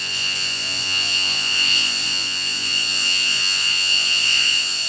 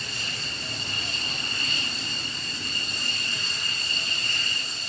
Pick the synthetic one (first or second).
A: first